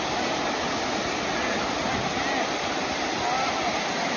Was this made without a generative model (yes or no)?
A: yes